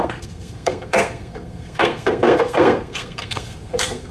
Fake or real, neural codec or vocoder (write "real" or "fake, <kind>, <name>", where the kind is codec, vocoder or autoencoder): fake, codec, SNAC